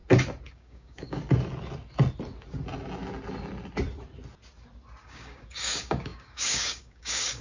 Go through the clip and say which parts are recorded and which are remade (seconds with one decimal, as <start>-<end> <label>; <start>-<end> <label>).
0.0-0.5 recorded; 0.5-1.2 remade; 1.2-5.0 recorded; 5.0-7.4 remade